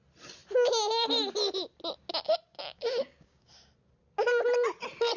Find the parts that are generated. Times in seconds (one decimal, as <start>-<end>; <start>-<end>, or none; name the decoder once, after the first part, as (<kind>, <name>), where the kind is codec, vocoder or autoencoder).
2.6-3.5 (codec, DAC)